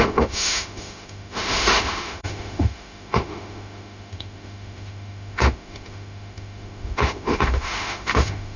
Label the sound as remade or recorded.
remade